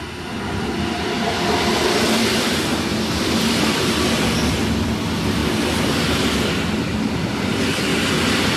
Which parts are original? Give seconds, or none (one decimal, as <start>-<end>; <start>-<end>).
0.0-8.6